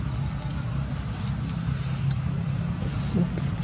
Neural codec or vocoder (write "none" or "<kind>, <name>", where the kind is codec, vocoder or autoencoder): none